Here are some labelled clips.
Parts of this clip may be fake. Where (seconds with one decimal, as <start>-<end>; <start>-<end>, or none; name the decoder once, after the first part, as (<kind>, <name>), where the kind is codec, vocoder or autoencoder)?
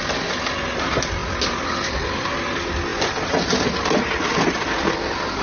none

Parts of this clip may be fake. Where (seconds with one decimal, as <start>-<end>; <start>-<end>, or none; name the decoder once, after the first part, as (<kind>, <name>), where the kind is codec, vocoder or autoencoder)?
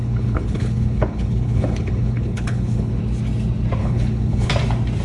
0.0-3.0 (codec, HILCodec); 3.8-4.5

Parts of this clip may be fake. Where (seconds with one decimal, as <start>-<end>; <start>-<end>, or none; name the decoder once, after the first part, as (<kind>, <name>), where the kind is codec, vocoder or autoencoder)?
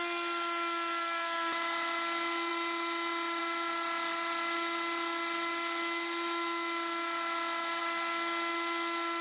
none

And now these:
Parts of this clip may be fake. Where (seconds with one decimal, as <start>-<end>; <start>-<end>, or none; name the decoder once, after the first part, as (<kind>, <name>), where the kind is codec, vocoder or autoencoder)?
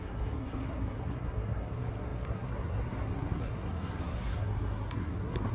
0.0-5.5 (codec, SNAC)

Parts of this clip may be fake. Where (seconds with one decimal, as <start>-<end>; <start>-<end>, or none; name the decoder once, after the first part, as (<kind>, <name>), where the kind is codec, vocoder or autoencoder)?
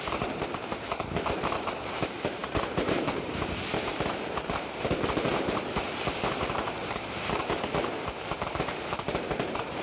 0.0-9.8 (vocoder, BigVGAN v2)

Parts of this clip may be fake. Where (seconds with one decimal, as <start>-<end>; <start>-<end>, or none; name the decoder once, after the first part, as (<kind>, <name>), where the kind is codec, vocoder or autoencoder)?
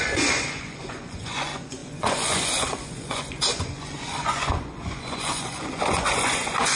0.0-6.8 (vocoder, Vocos)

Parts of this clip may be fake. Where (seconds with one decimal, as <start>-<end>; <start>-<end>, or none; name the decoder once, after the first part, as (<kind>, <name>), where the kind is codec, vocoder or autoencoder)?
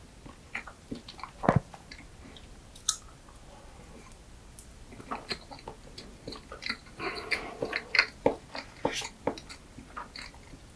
none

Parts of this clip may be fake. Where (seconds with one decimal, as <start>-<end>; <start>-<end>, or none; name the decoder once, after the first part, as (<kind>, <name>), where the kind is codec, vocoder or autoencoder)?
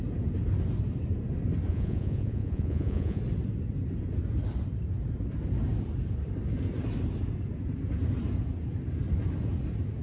1.7-3.2 (vocoder, Vocos)